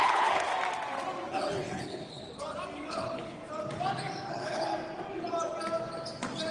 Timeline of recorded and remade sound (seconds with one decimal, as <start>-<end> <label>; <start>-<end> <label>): 0.0-0.5 remade; 0.5-1.3 recorded; 1.3-2.2 remade; 2.2-2.9 recorded; 2.9-3.4 remade; 3.4-4.3 recorded; 4.3-4.7 remade; 4.7-6.5 recorded